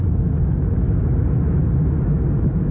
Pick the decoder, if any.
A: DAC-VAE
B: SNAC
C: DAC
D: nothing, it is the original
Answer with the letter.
A